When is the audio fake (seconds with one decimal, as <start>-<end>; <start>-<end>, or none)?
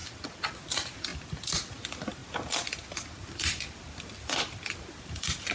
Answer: 0.5-1.1; 1.7-2.2; 3.1-5.5